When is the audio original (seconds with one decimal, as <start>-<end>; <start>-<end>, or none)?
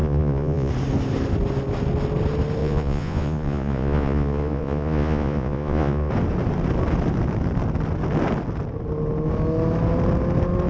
0.7-2.6; 6.1-10.7